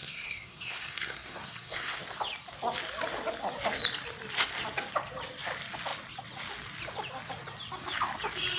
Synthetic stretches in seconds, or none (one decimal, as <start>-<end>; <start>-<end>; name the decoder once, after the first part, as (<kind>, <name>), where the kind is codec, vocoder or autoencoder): 0.0-2.0 (codec, SNAC)